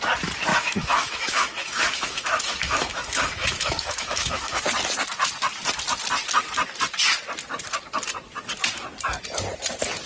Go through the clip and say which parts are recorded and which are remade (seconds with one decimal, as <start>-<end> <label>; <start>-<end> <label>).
0.0-0.5 recorded; 0.5-4.6 remade; 4.6-10.1 recorded